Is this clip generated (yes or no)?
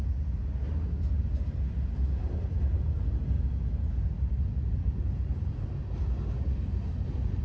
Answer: no